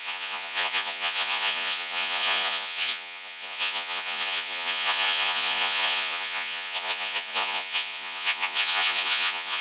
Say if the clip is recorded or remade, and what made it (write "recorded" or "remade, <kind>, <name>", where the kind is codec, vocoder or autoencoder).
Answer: remade, vocoder, Vocos